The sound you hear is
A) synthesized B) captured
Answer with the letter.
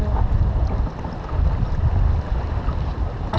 B